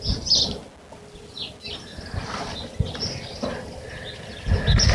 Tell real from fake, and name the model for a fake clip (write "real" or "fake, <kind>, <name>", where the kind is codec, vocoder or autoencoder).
real